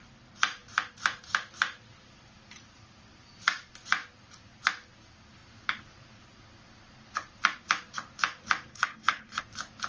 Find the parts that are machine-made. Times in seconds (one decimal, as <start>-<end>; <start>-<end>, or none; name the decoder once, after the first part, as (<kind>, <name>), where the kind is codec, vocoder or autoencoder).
8.7-9.4 (codec, HILCodec)

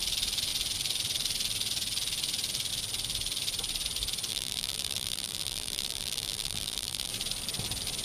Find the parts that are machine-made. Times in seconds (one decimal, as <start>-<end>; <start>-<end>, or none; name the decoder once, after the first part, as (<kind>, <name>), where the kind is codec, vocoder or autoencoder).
4.3-7.1 (vocoder, BigVGAN v2)

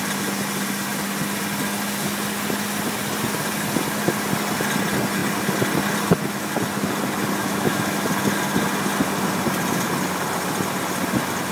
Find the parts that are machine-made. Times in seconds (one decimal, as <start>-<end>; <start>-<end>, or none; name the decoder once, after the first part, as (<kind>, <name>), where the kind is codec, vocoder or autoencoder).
7.4-8.0 (autoencoder, DAC-VAE)

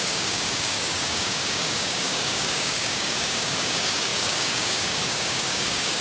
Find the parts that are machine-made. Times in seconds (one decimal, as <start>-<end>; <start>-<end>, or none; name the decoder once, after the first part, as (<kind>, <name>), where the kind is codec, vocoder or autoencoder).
0.0-6.0 (codec, DAC)

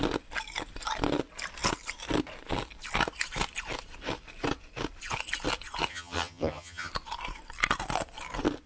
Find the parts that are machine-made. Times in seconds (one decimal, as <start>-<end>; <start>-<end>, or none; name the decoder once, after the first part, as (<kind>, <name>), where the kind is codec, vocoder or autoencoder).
5.9-6.9 (vocoder, HiFi-GAN)

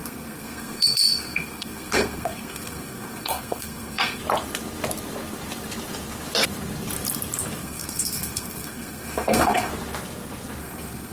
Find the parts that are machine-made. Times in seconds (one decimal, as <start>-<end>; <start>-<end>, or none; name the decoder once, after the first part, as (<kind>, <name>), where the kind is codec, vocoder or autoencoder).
0.0-4.2 (codec, SNAC); 7.6-9.7; 10.6-11.1

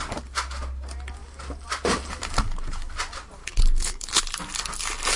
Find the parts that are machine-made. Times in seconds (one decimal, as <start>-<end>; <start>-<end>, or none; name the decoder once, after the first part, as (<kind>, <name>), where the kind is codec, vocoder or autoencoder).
3.4-4.2 (codec, HILCodec)

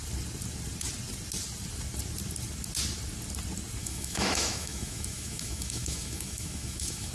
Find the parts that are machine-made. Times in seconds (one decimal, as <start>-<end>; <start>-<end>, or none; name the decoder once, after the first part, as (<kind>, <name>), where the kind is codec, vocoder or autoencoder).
3.8-7.1 (autoencoder, DAC-VAE)